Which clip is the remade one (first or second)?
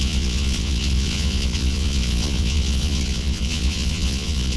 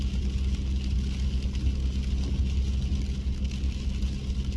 first